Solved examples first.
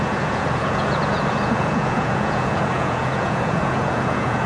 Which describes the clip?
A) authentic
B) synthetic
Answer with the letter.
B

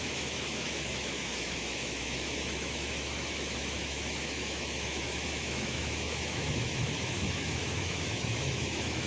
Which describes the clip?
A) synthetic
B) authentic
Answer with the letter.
A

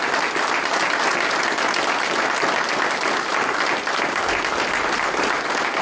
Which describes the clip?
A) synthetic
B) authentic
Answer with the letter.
B